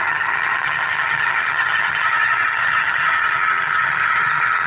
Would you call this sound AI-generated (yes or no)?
yes